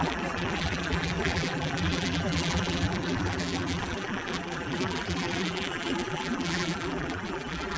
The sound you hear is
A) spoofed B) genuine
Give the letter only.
A